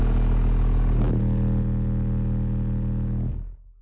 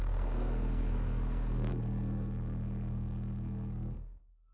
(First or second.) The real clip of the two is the first